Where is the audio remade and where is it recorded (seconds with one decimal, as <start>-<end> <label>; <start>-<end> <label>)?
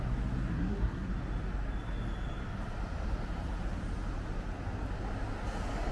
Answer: 0.0-0.5 recorded; 0.5-1.1 remade; 1.1-5.9 recorded